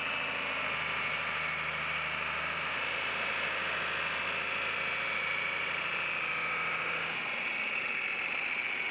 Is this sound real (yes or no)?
yes